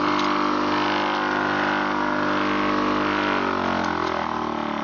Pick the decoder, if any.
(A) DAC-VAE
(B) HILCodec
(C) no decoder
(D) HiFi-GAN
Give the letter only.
C